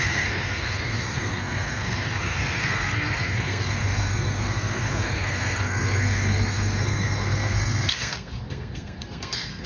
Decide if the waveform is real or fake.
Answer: fake